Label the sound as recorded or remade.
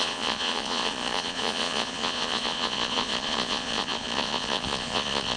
remade